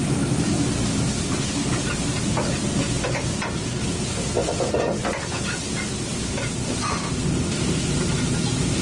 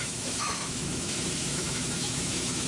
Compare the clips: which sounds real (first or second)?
first